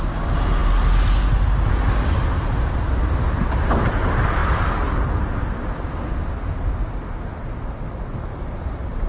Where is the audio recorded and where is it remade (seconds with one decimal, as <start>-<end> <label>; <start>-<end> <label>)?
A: 0.0-9.1 recorded